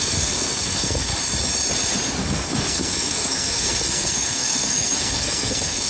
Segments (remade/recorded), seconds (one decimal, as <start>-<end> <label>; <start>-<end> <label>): 0.0-1.1 remade; 1.1-2.2 recorded; 2.2-5.9 remade